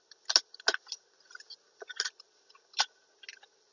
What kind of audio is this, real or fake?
real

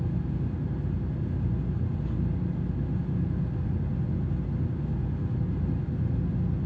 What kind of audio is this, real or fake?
real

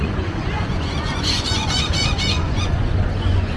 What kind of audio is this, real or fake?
fake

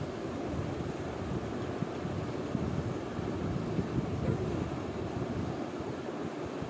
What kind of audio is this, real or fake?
real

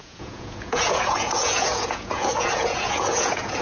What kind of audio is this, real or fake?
fake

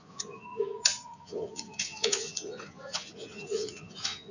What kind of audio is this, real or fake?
fake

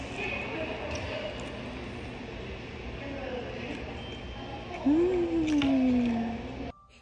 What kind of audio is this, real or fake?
real